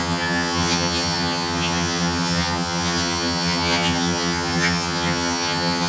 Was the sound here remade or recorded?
remade